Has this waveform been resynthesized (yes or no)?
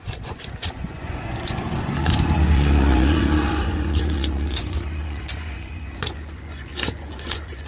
yes